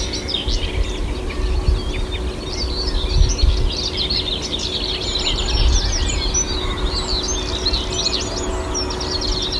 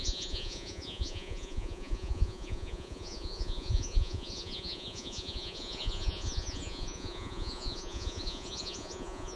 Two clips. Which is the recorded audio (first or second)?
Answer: first